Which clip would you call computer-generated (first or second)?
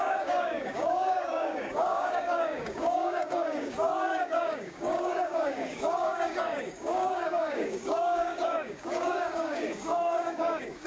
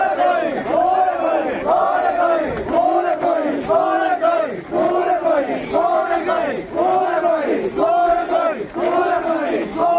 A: first